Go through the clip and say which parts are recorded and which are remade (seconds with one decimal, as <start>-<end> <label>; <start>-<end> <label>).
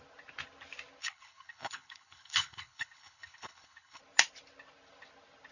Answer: 0.0-1.0 recorded; 1.0-4.0 remade; 4.0-5.5 recorded